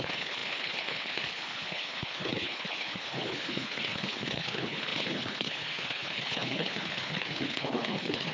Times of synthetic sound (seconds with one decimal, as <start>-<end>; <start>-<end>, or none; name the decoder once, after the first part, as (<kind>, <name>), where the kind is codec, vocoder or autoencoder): 0.0-8.3 (codec, HILCodec)